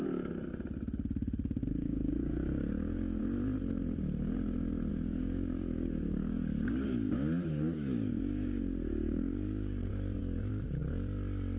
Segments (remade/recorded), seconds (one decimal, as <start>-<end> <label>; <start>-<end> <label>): 0.0-1.6 recorded; 1.6-3.2 remade; 3.2-4.9 recorded; 4.9-9.9 remade; 9.9-11.6 recorded